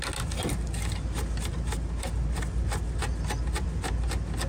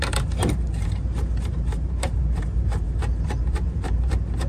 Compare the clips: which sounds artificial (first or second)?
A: second